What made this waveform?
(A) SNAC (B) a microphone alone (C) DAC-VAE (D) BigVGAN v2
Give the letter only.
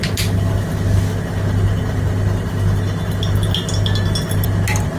B